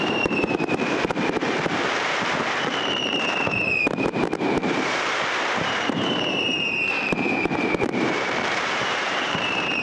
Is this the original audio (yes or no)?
no